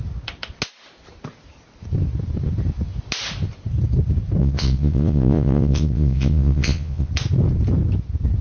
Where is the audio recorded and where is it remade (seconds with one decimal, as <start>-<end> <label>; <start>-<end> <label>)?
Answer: 0.0-4.4 recorded; 4.4-7.1 remade; 7.1-8.4 recorded